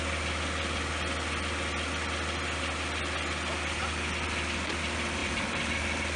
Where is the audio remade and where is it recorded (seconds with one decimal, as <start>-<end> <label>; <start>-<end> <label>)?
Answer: 0.0-5.2 recorded; 5.2-5.8 remade; 5.8-6.2 recorded